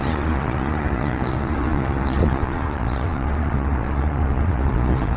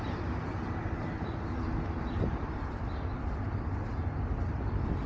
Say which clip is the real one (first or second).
second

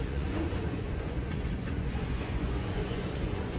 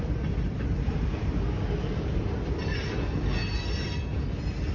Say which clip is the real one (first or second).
second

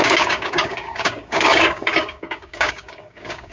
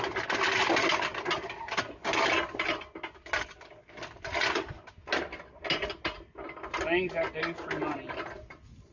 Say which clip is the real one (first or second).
second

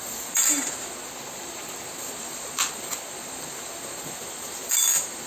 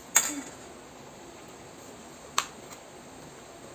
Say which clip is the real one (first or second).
second